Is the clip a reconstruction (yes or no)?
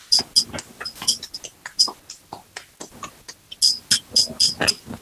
no